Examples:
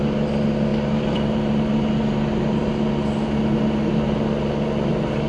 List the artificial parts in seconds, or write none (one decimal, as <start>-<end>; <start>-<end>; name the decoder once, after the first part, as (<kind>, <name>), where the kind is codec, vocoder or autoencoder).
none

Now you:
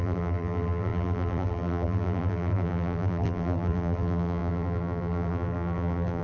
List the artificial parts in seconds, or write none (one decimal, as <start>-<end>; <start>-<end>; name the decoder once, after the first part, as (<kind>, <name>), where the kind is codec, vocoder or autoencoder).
0.0-6.2 (vocoder, BigVGAN v2)

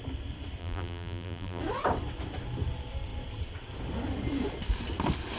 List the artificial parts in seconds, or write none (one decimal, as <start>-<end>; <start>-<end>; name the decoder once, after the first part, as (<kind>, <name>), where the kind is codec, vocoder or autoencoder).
0.6-1.6 (vocoder, BigVGAN v2)

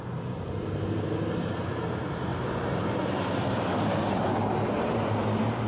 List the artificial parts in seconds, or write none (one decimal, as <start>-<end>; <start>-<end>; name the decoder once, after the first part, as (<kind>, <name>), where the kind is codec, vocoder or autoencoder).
0.0-4.3 (vocoder, BigVGAN v2); 4.8-5.7